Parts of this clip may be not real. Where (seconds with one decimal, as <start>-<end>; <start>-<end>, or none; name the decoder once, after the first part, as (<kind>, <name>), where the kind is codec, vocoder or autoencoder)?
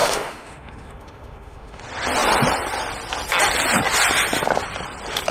0.0-1.8 (autoencoder, DAC-VAE)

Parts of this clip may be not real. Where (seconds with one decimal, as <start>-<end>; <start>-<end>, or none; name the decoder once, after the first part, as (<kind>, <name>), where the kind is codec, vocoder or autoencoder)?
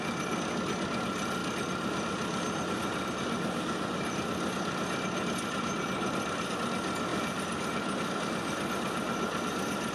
1.4-6.5 (vocoder, BigVGAN v2); 7.1-8.1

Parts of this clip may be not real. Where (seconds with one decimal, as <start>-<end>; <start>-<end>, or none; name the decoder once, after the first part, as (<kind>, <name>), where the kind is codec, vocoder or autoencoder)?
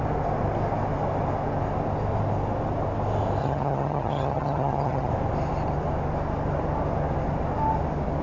3.4-5.1 (vocoder, HiFi-GAN)